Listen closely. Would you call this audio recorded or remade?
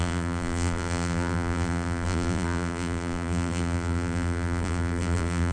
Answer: remade